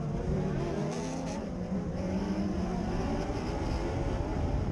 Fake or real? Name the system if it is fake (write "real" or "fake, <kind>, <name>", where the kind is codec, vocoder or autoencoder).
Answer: real